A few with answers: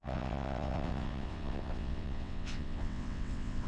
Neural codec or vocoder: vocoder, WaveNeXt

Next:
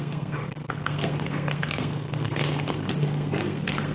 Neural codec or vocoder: codec, SNAC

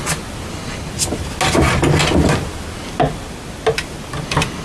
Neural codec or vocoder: none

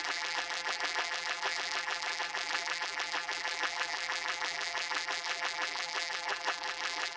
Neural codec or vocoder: vocoder, BigVGAN v2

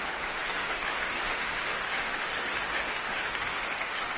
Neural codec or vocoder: autoencoder, DAC-VAE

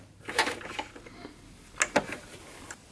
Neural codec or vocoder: none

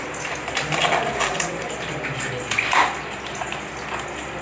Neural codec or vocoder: vocoder, BigVGAN v2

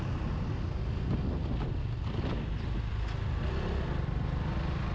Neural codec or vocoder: none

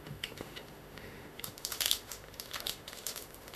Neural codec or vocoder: autoencoder, DAC-VAE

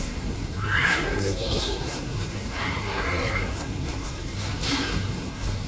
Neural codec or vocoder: codec, SNAC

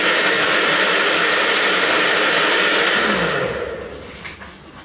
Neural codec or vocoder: none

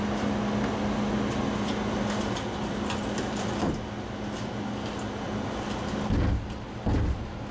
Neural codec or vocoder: none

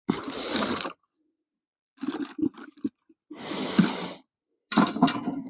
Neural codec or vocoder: none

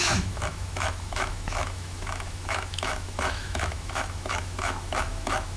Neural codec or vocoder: autoencoder, DAC-VAE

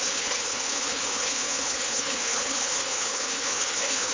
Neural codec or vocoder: codec, HILCodec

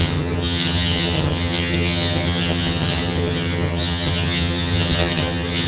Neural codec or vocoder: vocoder, HiFi-GAN